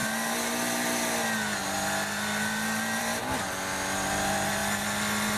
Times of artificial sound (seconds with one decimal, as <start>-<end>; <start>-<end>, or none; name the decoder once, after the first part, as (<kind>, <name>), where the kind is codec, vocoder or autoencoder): none